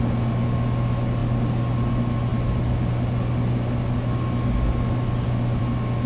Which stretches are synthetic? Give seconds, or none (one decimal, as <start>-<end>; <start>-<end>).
none